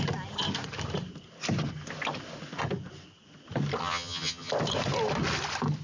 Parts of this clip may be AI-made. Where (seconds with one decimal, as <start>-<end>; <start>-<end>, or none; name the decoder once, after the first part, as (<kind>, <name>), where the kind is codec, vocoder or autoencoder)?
3.8-4.5 (vocoder, HiFi-GAN)